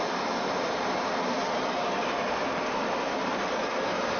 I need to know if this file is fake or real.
fake